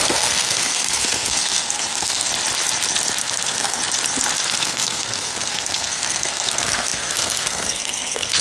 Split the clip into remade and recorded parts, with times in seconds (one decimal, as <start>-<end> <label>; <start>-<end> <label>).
0.0-2.3 remade; 2.3-3.2 recorded; 3.2-3.8 remade; 3.8-4.5 recorded; 4.5-8.4 remade

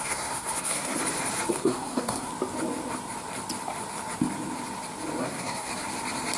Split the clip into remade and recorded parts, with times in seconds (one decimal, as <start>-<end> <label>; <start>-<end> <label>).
0.0-1.0 remade; 1.0-1.5 recorded; 1.5-2.3 remade; 2.3-5.2 recorded; 5.2-5.7 remade; 5.7-6.4 recorded

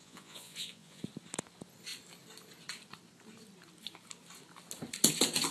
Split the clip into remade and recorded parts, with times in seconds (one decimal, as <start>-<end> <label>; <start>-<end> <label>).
0.0-1.0 remade; 1.0-5.5 recorded

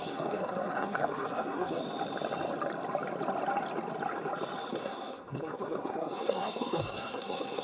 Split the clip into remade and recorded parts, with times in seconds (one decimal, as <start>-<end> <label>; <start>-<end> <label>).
0.0-1.8 remade; 1.8-4.7 recorded; 4.7-7.6 remade

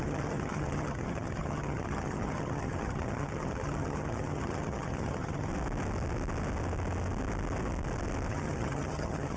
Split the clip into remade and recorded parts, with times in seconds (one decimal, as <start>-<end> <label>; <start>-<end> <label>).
0.0-5.5 remade; 5.5-8.3 recorded; 8.3-9.4 remade

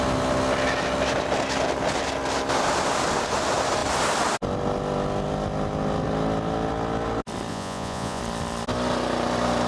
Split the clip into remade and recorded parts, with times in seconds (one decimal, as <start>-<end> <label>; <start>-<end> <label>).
0.0-7.5 recorded; 7.5-8.2 remade; 8.2-9.7 recorded